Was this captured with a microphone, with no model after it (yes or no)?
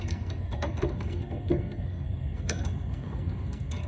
no